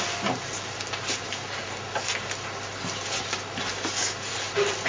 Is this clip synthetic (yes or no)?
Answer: no